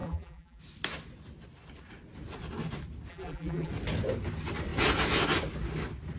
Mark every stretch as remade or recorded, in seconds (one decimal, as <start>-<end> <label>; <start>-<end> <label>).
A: 0.0-0.6 remade; 0.6-3.1 recorded; 3.1-3.7 remade; 3.7-6.2 recorded